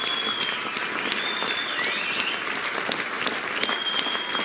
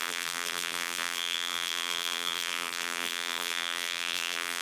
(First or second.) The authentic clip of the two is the first